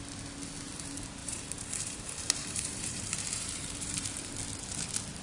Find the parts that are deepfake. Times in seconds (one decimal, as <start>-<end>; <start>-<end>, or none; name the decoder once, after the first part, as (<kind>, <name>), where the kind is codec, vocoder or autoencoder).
1.2-4.3 (vocoder, BigVGAN v2)

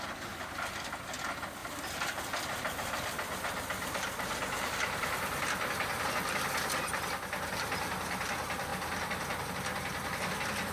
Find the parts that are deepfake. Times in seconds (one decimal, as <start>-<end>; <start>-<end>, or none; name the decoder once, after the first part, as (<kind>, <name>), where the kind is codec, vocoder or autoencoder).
1.6-6.1 (vocoder, BigVGAN v2)

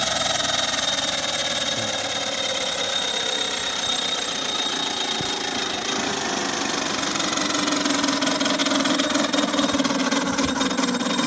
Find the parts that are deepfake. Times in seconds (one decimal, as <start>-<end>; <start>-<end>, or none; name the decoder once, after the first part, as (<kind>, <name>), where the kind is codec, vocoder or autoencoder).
1.4-6.1 (vocoder, BigVGAN v2); 8.6-9.3